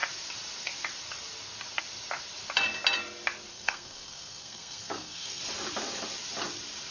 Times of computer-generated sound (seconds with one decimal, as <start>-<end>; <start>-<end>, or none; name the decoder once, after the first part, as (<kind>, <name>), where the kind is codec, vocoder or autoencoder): 3.5-5.4 (codec, SNAC)